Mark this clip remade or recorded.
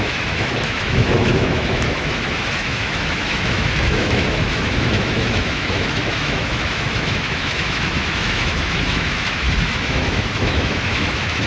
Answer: remade